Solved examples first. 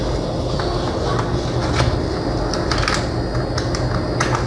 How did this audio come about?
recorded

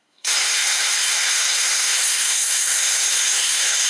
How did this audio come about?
remade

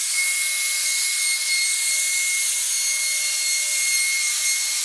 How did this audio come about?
recorded